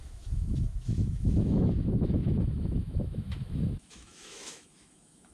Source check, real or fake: fake